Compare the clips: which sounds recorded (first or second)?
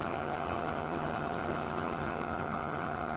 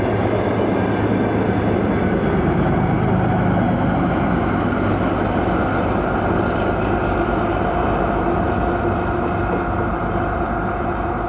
second